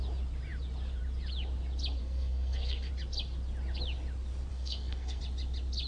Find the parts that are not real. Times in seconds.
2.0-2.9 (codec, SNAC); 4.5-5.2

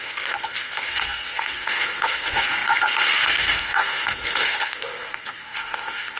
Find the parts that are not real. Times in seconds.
0.0-6.2 (codec, SNAC)

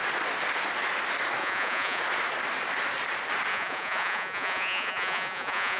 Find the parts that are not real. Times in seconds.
1.4-2.0 (vocoder, Vocos); 3.5-5.8

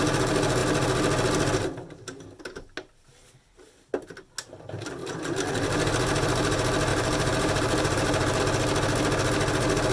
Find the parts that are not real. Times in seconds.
6.9-8.4 (vocoder, BigVGAN v2)

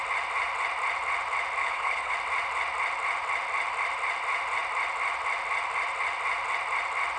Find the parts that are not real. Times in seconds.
1.6-2.1 (codec, HILCodec)